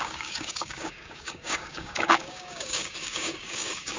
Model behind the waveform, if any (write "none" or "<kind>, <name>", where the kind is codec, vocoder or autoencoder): codec, DAC